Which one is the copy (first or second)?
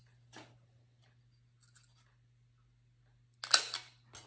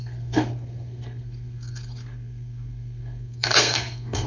second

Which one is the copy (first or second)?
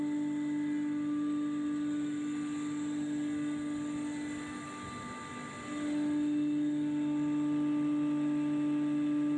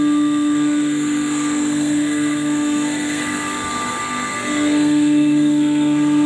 second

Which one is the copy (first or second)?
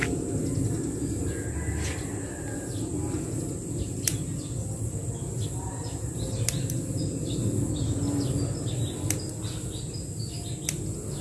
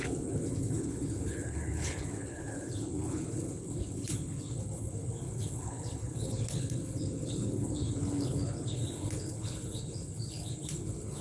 second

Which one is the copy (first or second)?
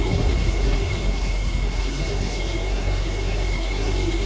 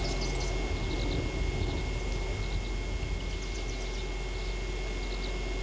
first